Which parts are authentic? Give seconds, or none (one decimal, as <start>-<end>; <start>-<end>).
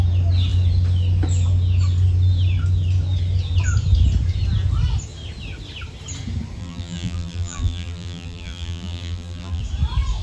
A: 0.0-6.6; 9.6-10.2